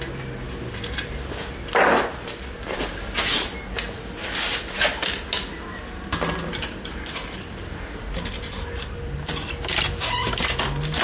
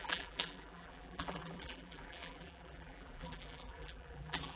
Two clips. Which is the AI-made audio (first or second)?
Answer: second